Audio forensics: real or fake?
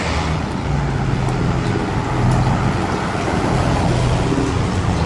real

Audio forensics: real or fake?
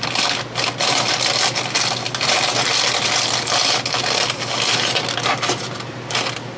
real